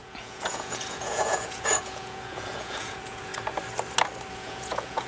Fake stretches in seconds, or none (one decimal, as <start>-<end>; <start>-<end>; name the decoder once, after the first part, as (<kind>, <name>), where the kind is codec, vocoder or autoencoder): 0.0-3.3 (vocoder, Vocos); 4.3-5.1